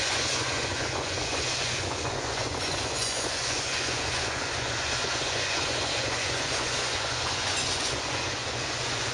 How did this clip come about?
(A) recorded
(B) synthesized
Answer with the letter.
B